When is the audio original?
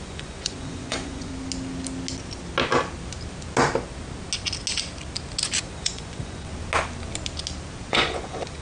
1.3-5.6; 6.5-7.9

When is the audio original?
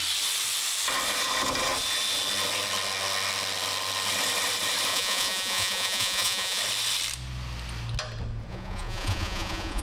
0.0-4.9; 6.6-8.5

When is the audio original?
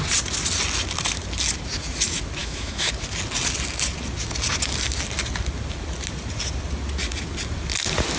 0.0-2.4; 2.9-8.2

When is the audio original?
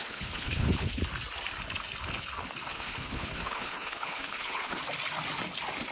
1.0-2.7; 4.8-5.9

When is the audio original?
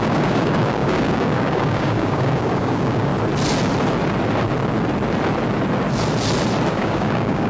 3.1-6.7